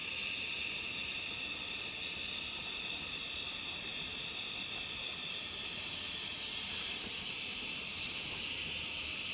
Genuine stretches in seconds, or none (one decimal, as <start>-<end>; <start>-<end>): 0.0-2.6